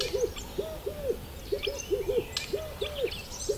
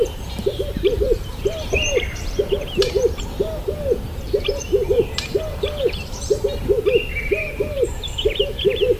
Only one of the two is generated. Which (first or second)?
second